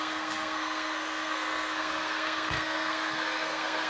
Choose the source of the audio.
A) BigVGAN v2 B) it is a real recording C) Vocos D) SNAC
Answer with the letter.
D